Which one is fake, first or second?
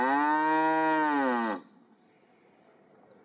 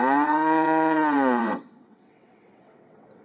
second